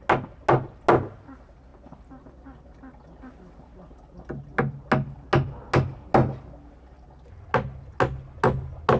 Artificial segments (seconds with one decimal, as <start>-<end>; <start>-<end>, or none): none